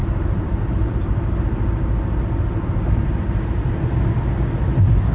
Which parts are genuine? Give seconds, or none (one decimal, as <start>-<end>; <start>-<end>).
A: 0.9-3.0; 3.8-5.1